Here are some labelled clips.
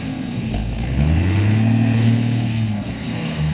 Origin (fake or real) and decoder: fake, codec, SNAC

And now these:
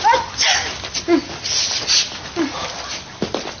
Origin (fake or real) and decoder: real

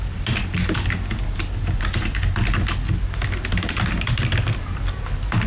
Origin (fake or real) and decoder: real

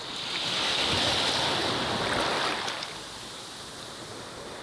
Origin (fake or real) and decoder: real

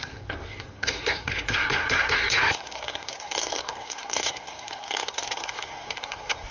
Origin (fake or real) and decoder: fake, codec, SNAC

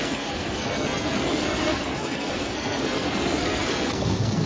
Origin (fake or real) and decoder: fake, codec, SNAC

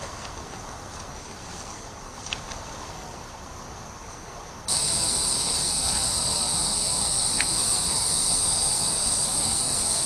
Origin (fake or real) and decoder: fake, codec, SNAC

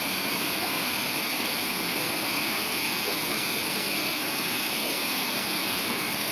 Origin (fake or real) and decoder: fake, codec, SNAC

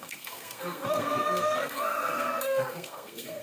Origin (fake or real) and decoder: fake, codec, SNAC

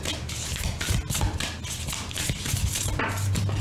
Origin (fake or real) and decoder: real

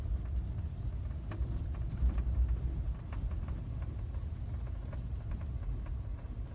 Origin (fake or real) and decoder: real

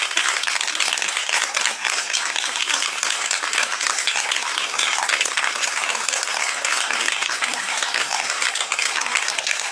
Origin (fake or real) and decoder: fake, codec, SNAC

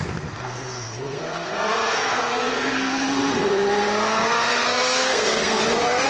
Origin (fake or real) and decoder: fake, codec, SNAC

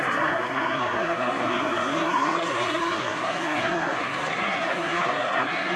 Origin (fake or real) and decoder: fake, codec, SNAC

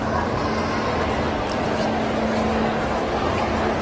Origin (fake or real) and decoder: real